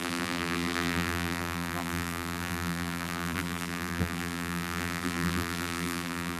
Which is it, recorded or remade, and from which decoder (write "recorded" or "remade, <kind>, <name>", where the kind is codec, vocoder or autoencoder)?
remade, vocoder, BigVGAN v2